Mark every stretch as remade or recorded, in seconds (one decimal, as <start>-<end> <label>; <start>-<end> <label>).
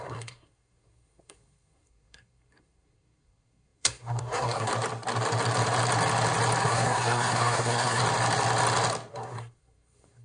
0.0-4.7 remade; 4.7-6.6 recorded; 6.6-8.0 remade; 8.0-9.1 recorded; 9.1-10.2 remade